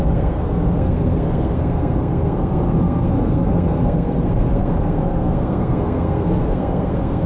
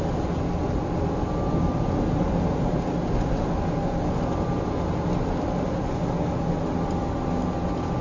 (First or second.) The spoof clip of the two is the first